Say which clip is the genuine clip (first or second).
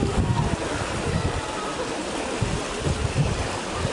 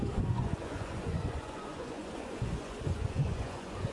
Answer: first